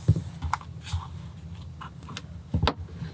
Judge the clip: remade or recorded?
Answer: recorded